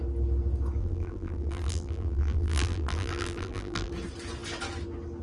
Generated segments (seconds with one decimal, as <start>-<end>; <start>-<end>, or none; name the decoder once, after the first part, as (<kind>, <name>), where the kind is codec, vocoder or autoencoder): 0.8-3.9 (vocoder, BigVGAN v2)